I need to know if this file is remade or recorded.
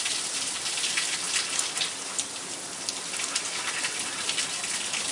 recorded